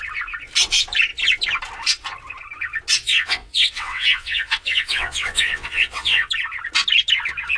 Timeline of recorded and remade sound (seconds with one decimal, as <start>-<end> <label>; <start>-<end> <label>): 0.0-3.0 recorded; 3.0-6.3 remade; 6.3-7.6 recorded